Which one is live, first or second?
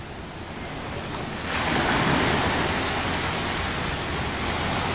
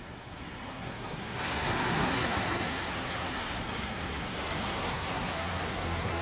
first